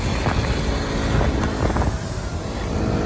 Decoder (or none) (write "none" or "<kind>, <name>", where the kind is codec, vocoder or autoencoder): none